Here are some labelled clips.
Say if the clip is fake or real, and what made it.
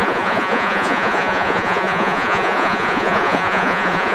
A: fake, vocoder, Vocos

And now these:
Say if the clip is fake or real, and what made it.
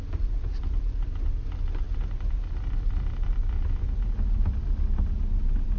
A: real